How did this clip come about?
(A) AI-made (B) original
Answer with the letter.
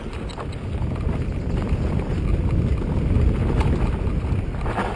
B